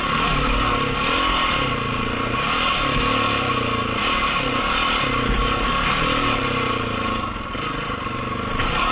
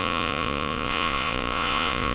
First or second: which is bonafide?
first